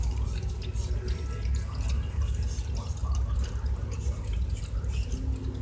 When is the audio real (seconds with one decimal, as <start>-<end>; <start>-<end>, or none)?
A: 0.0-5.6